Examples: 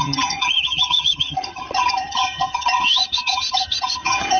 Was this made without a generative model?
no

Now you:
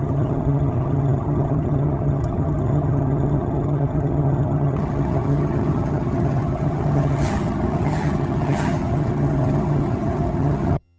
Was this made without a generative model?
no